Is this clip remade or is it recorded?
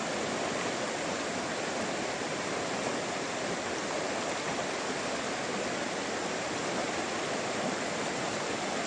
recorded